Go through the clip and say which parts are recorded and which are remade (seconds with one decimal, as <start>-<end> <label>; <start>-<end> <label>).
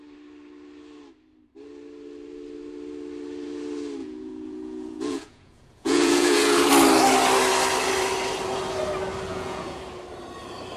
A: 0.0-4.0 recorded; 4.0-6.7 remade; 6.7-9.3 recorded; 9.3-9.8 remade; 9.8-10.8 recorded